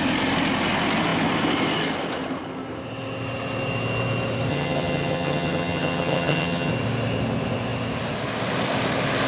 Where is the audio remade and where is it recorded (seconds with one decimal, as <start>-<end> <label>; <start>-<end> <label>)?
0.0-4.5 recorded; 4.5-6.7 remade; 6.7-9.3 recorded